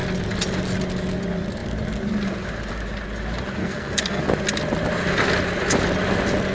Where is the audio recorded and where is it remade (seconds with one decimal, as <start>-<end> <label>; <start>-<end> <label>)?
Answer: 0.0-3.6 recorded; 3.6-4.2 remade; 4.2-6.5 recorded